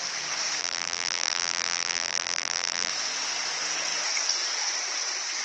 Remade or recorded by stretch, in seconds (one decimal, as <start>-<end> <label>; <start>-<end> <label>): 0.0-0.6 recorded; 0.6-2.9 remade; 2.9-5.4 recorded